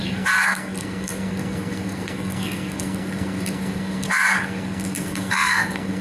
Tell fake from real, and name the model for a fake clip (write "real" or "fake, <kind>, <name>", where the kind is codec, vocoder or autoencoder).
fake, codec, SNAC